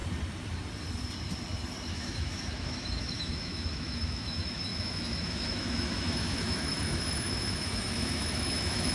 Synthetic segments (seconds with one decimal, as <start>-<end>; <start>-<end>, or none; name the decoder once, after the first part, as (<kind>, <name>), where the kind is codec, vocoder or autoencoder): 1.9-8.9 (autoencoder, DAC-VAE)